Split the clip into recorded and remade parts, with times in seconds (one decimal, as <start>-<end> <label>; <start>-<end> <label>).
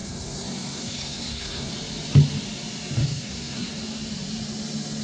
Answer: 0.0-1.7 remade; 1.7-3.0 recorded; 3.0-3.7 remade; 3.7-5.0 recorded